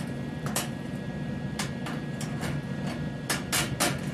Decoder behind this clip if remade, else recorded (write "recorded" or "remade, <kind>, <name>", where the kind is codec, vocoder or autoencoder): recorded